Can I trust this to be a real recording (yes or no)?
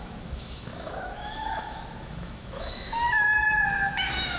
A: no